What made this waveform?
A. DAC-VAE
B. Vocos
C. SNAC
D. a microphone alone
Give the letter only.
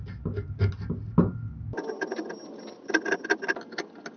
D